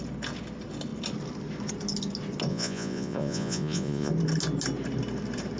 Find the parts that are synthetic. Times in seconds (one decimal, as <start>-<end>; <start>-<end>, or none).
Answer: 2.5-4.1